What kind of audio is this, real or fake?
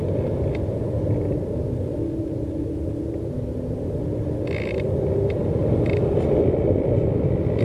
real